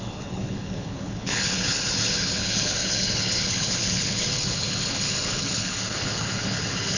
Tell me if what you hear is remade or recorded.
remade